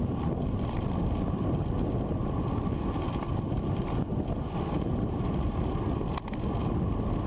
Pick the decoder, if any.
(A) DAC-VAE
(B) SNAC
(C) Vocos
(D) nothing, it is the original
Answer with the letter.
D